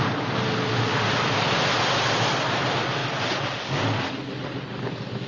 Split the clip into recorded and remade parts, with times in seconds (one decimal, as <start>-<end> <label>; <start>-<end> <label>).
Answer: 0.0-5.3 recorded